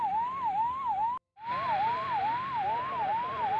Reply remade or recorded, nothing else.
recorded